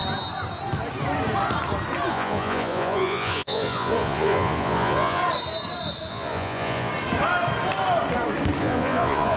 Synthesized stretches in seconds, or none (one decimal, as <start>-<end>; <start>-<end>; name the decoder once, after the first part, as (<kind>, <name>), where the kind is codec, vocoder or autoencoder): 2.1-5.2 (vocoder, Vocos); 6.1-6.9; 8.6-9.4